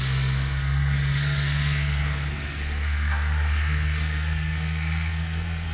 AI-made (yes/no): yes